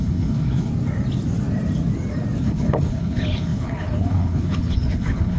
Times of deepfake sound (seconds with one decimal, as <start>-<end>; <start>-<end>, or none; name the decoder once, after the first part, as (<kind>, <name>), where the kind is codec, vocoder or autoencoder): 0.0-0.7 (codec, HILCodec); 2.4-5.4